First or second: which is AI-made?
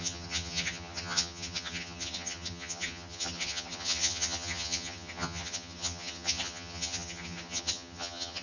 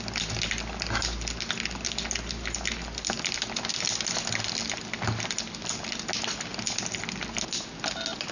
first